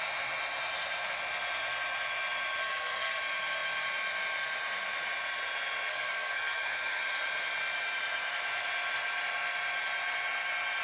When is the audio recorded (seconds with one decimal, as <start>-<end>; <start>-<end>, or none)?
0.0-2.6; 3.2-5.9; 7.0-10.8